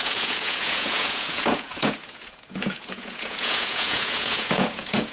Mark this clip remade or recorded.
remade